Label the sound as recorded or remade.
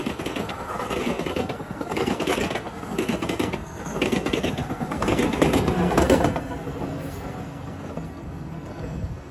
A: remade